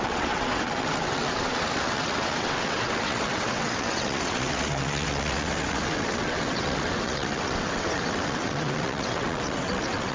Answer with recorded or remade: remade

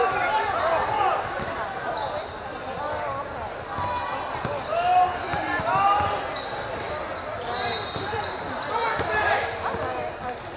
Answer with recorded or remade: recorded